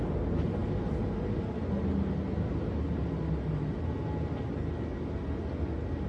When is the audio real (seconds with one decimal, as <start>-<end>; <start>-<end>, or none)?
0.0-6.1

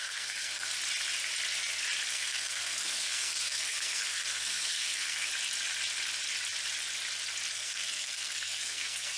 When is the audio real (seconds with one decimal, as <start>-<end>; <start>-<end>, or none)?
0.7-2.1; 5.3-7.5

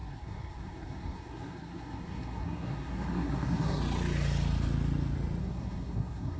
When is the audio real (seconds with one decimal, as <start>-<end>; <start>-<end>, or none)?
3.8-5.4

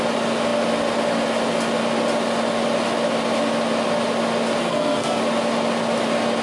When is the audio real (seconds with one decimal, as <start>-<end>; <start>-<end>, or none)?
0.0-4.6; 5.2-6.4

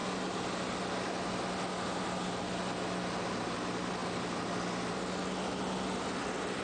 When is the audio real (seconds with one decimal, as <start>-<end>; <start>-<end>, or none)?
0.0-6.6